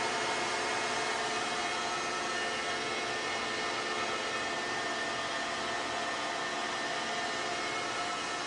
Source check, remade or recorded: recorded